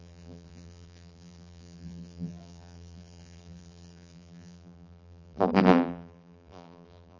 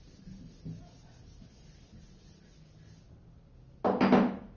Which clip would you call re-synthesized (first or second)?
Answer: first